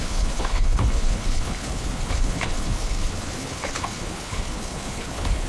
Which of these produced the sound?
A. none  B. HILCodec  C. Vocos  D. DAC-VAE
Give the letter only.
B